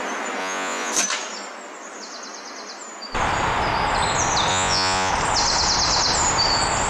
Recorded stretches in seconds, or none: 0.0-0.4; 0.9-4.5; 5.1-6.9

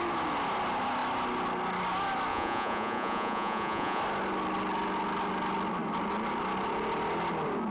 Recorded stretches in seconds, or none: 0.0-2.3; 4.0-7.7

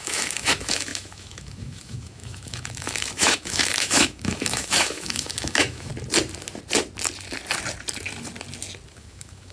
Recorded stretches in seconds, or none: 5.9-8.9

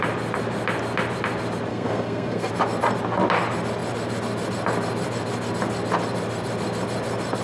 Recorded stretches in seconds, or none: 0.0-1.7; 2.5-7.4

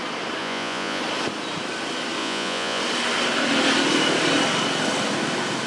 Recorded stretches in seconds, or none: 0.0-0.4; 1.0-2.2; 2.8-5.7

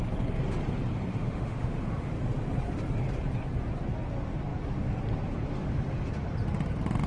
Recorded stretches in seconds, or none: 0.0-1.1; 2.1-7.1